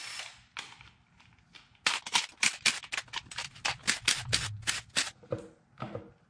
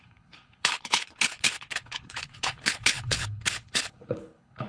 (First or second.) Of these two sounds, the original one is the first